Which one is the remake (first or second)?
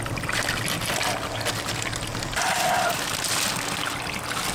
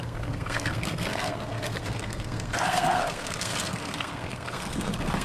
second